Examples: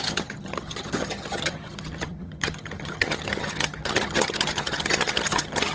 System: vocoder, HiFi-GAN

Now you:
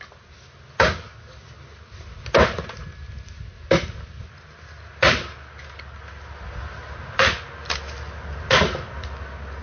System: none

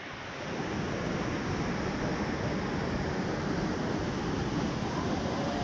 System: none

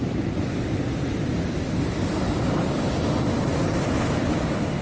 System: none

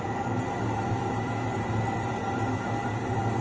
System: none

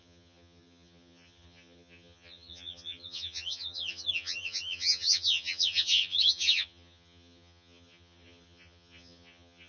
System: vocoder, HiFi-GAN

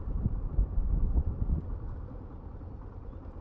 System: none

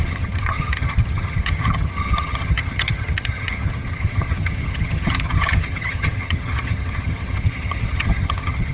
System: vocoder, HiFi-GAN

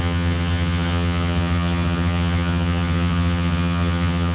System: vocoder, HiFi-GAN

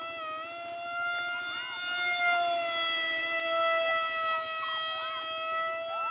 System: none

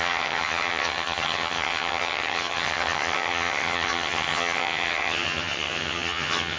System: vocoder, HiFi-GAN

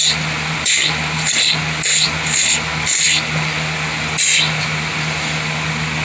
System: none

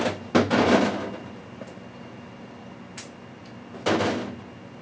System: none